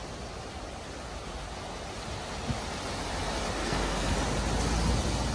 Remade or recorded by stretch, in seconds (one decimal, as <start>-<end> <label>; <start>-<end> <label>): 0.0-3.6 recorded; 3.6-4.1 remade; 4.1-5.3 recorded

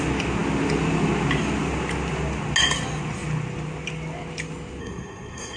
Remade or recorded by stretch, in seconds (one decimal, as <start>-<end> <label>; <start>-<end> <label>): 0.0-4.8 recorded; 4.8-5.6 remade

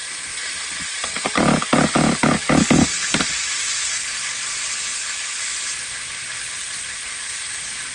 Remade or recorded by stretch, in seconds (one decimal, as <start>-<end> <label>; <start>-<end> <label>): 0.0-3.3 recorded; 3.3-4.9 remade; 4.9-5.7 recorded; 5.7-7.9 remade

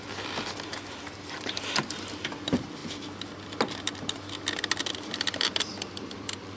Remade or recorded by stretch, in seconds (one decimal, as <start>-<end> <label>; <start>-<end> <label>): 0.0-2.8 remade; 2.8-4.8 recorded; 4.8-6.6 remade